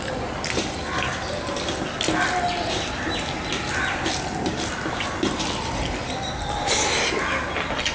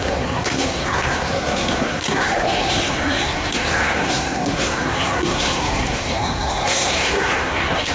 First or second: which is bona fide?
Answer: first